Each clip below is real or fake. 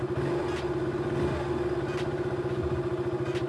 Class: real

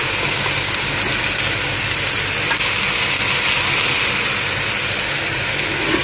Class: real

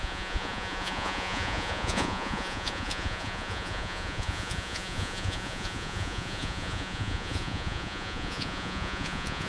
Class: fake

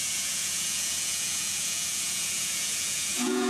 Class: fake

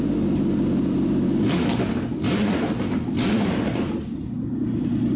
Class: real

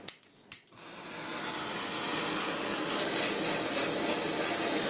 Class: real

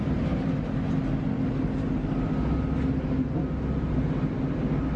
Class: real